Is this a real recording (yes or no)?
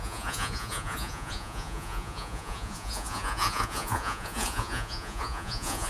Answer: no